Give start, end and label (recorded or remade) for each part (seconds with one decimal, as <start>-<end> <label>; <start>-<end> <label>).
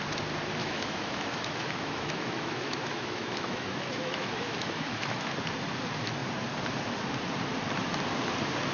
0.0-0.6 recorded; 0.6-5.3 remade; 5.3-8.7 recorded